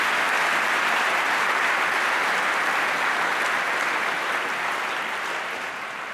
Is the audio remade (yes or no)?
no